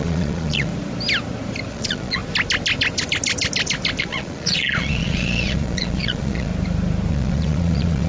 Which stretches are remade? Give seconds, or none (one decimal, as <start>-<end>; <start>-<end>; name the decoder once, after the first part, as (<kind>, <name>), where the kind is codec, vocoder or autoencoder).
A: 0.0-0.7 (vocoder, Vocos); 1.7-2.2; 4.0-6.5; 7.1-8.1